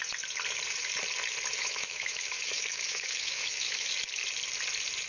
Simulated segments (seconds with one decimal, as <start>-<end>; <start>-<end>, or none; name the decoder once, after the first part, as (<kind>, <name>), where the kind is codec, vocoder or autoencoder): 1.6-3.9 (autoencoder, DAC-VAE)